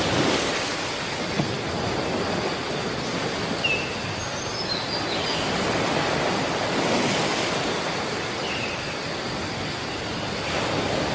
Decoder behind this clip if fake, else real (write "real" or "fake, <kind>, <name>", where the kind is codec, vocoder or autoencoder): real